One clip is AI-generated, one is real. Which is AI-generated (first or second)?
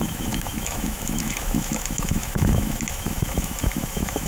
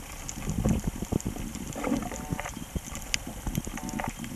first